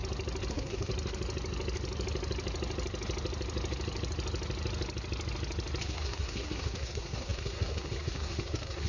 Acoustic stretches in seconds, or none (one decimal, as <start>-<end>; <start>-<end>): 0.0-0.5; 0.9-5.8